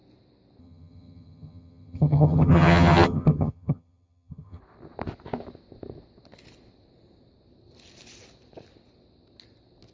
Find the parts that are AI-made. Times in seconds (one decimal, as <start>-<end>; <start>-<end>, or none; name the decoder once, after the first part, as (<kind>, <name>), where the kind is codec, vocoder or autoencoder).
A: 0.6-4.6 (vocoder, HiFi-GAN)